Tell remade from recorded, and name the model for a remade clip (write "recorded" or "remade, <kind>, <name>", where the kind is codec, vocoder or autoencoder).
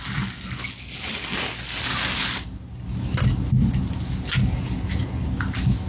recorded